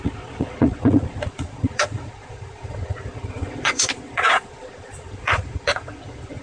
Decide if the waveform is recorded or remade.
remade